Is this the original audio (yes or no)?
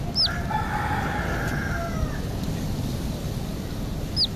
yes